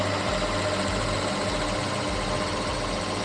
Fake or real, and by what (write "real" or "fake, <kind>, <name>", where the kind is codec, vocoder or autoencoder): real